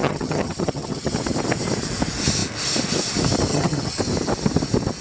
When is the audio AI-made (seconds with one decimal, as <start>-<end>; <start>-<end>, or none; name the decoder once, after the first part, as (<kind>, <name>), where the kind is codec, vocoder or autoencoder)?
0.0-1.1 (vocoder, HiFi-GAN); 3.5-4.0